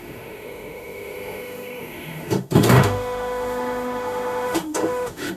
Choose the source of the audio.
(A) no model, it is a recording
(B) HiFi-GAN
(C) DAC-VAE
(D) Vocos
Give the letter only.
C